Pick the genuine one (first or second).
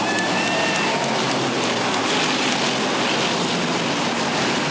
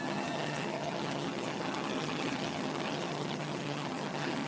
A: first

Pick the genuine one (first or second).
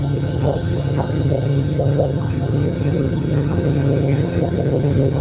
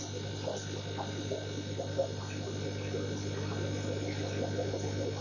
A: second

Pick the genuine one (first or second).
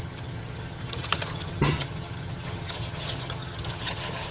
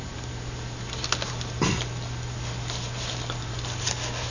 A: second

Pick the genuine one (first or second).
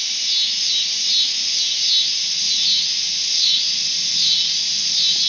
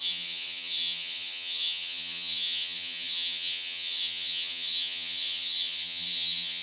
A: first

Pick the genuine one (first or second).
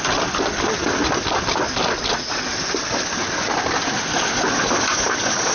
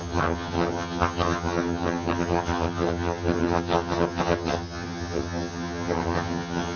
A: first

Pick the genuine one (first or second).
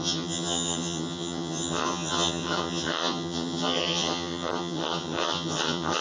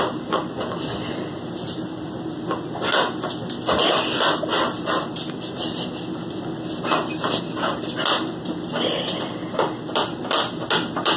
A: second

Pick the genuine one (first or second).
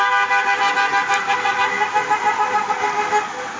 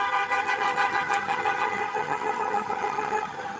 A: first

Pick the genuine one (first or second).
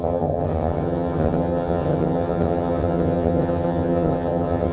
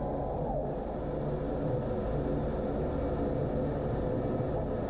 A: second